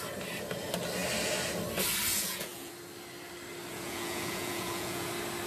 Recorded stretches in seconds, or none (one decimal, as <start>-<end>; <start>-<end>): 0.0-2.1; 2.7-3.7; 5.1-5.5